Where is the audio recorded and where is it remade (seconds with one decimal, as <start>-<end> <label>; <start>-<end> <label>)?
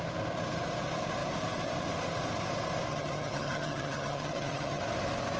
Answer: 0.0-2.9 recorded; 2.9-4.8 remade; 4.8-5.4 recorded